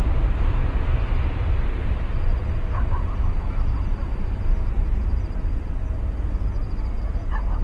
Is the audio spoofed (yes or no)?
no